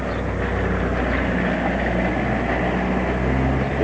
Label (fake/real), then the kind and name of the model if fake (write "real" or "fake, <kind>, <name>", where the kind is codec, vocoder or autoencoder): real